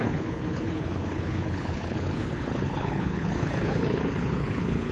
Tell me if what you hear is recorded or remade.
remade